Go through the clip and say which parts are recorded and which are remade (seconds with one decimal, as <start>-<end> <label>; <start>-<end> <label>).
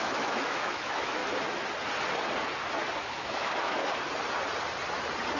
0.0-1.2 remade; 1.2-3.0 recorded; 3.0-3.8 remade; 3.8-5.4 recorded